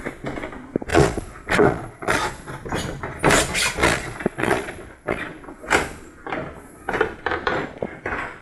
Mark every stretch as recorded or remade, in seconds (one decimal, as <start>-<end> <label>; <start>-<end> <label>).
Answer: 0.0-0.9 recorded; 0.9-2.5 remade; 2.5-3.8 recorded; 3.8-5.6 remade; 5.6-8.4 recorded